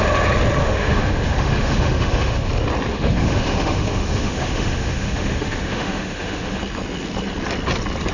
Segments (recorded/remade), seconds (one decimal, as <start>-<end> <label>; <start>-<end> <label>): 0.0-0.6 recorded; 0.6-2.5 remade; 2.5-2.9 recorded; 2.9-6.6 remade; 6.6-8.1 recorded